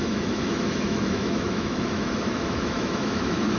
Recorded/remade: remade